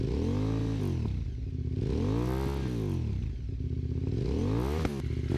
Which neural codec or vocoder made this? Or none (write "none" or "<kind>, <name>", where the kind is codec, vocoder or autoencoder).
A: none